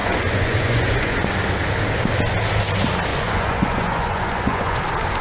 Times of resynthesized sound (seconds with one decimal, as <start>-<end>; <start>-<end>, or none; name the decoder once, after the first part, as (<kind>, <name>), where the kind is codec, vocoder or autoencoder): 0.0-1.3 (vocoder, Vocos); 3.1-4.8